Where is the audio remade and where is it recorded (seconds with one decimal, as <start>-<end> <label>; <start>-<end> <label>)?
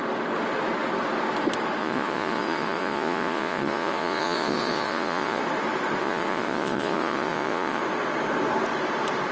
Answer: 0.0-1.8 recorded; 1.8-5.4 remade; 5.4-6.0 recorded; 6.0-7.8 remade; 7.8-9.3 recorded